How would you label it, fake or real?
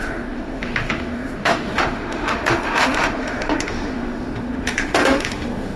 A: fake